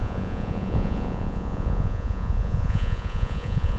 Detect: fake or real fake